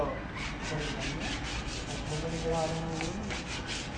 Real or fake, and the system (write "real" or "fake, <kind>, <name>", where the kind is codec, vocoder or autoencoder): real